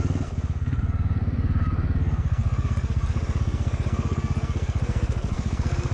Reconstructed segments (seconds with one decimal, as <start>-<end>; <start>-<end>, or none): 0.0-5.9